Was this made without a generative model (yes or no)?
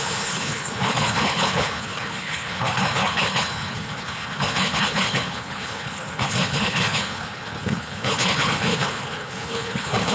no